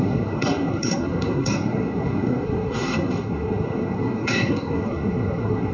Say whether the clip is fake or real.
fake